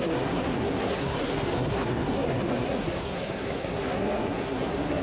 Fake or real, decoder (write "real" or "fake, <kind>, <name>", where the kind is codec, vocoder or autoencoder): fake, codec, SNAC